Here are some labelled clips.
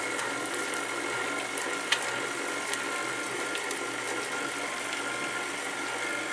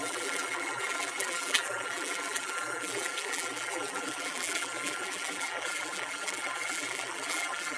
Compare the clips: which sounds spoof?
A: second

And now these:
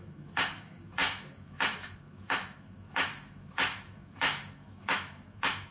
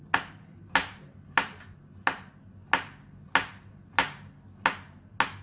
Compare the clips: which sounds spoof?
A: first